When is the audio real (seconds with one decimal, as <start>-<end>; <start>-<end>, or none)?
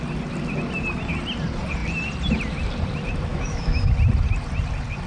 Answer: 0.0-3.3; 3.9-5.1